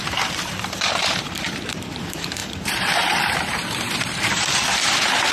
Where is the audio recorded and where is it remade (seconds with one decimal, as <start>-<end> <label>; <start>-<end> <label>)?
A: 0.0-5.3 remade